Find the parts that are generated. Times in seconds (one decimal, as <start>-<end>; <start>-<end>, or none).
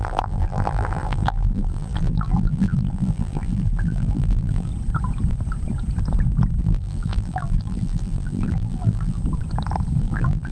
0.0-4.7; 6.6-9.2; 10.0-10.5